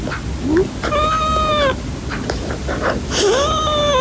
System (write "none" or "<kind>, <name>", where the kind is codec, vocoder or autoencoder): none